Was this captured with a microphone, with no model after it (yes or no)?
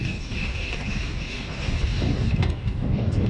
no